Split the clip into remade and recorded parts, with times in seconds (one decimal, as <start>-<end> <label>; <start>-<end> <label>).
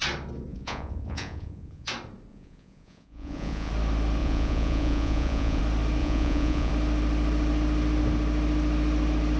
0.0-0.5 recorded; 0.5-1.9 remade; 1.9-2.3 recorded; 2.3-3.7 remade; 3.7-4.2 recorded; 4.2-5.6 remade; 5.6-6.0 recorded; 6.0-6.7 remade; 6.7-9.4 recorded